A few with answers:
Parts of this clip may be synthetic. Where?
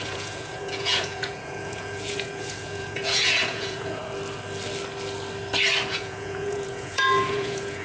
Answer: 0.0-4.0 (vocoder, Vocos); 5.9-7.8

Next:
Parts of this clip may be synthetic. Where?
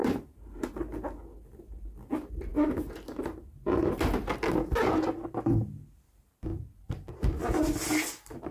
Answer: 0.0-0.7 (vocoder, BigVGAN v2); 2.5-3.8; 6.5-7.4